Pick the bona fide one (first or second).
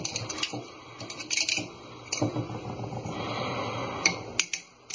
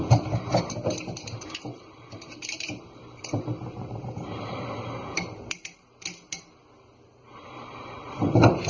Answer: first